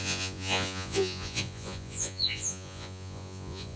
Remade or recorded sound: remade